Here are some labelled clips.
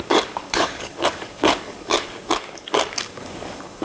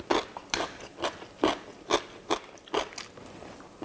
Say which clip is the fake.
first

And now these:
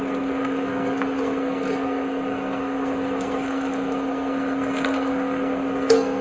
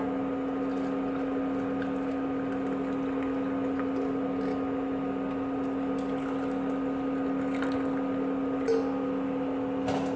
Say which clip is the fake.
first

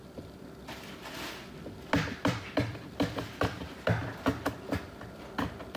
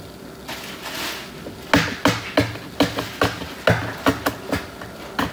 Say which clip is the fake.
first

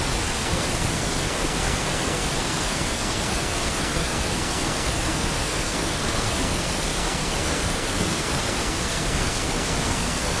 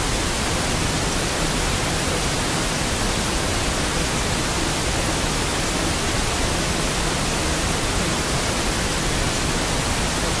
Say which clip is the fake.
first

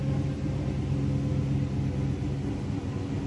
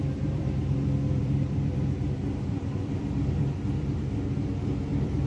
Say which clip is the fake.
second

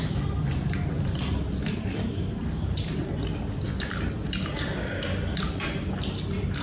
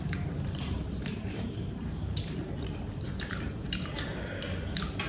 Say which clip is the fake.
second